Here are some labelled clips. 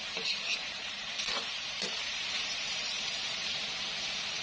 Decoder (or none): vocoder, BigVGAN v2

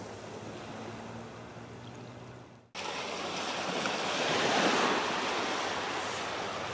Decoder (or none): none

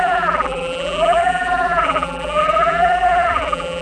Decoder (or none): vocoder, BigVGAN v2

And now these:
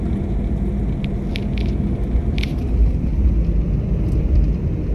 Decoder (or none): none